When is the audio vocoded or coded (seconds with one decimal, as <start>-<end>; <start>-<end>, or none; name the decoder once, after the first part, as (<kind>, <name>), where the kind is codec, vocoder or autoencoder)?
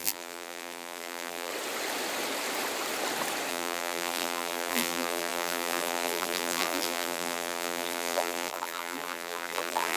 0.0-1.5 (vocoder, BigVGAN v2); 3.5-10.0